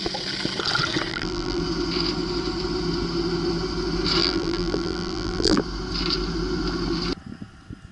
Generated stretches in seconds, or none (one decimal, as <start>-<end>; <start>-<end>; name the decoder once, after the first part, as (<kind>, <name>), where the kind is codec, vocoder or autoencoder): 1.1-1.6 (vocoder, BigVGAN v2); 4.2-5.6